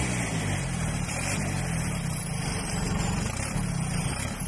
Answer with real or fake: real